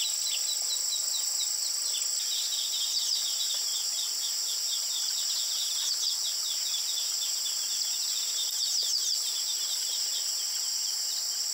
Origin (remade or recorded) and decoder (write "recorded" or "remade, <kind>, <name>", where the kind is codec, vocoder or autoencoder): recorded